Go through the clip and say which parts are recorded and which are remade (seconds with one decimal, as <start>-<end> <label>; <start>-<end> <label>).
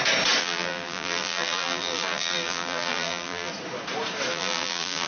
0.0-0.4 recorded; 0.4-3.5 remade; 3.5-4.3 recorded; 4.3-5.1 remade